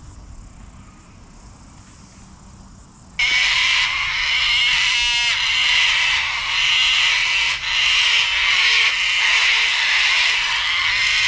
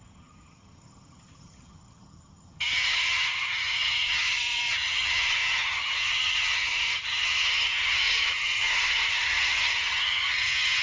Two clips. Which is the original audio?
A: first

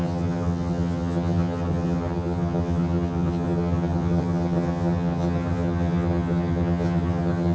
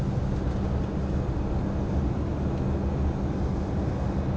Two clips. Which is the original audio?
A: second